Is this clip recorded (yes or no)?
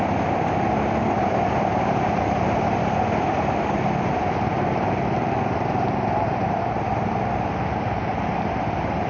yes